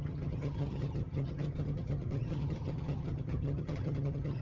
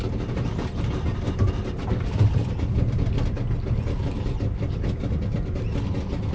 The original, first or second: second